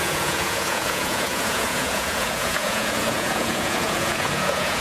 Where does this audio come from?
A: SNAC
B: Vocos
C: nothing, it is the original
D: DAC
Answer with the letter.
B